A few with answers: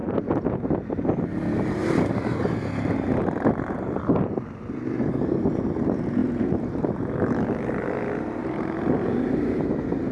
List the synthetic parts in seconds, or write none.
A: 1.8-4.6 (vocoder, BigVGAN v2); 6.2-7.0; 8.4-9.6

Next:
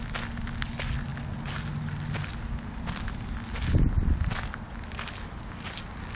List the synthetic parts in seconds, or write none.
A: none

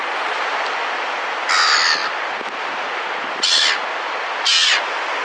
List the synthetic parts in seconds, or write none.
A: none